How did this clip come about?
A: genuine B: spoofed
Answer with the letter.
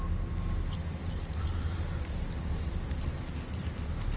A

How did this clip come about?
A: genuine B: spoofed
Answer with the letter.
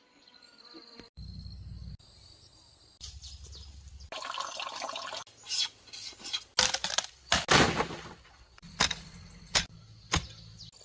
A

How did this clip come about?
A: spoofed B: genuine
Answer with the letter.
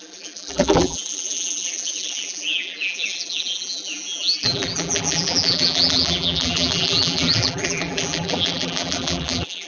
A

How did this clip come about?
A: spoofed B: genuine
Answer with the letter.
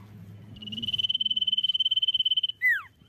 B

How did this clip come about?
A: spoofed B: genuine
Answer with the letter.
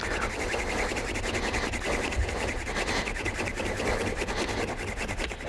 B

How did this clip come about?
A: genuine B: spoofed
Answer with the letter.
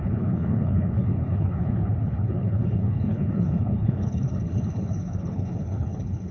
B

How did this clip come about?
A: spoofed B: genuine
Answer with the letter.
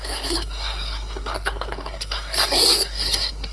A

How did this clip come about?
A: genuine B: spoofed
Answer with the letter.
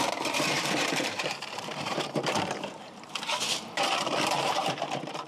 B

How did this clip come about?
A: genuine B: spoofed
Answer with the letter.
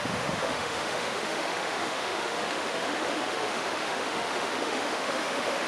B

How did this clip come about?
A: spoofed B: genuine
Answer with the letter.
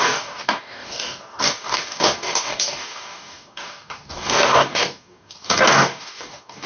A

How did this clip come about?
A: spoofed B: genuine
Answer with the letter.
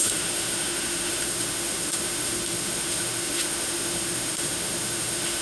A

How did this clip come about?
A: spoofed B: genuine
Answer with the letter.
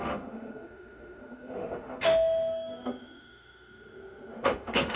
A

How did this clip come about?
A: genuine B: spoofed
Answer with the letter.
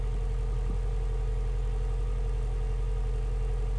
A